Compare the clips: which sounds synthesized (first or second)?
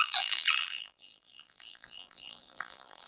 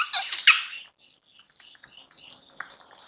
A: first